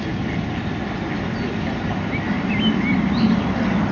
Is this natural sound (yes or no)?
yes